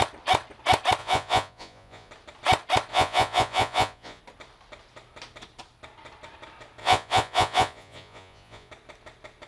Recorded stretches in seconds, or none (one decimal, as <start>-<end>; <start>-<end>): 0.0-1.0; 2.1-2.9; 4.2-6.8; 8.7-9.5